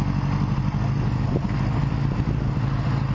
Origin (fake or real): real